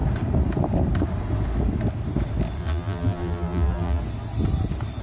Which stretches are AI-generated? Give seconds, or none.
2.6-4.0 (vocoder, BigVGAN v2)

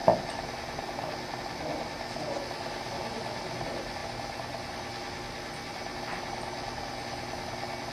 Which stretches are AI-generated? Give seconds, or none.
4.0-6.0 (vocoder, BigVGAN v2)

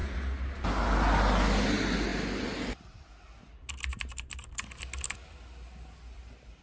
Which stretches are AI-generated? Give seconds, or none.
0.0-0.6 (vocoder, BigVGAN v2); 3.9-4.8